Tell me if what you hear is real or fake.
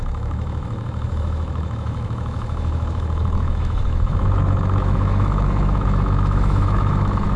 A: fake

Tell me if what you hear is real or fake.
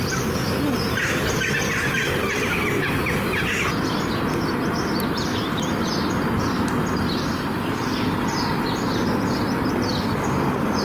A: real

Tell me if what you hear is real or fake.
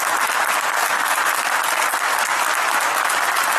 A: real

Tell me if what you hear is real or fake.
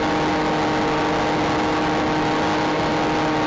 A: real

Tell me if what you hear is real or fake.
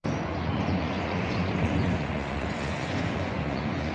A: fake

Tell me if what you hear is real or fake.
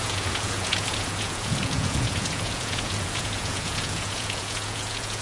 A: fake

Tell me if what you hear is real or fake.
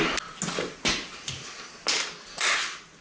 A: real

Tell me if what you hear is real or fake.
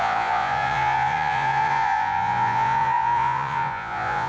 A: fake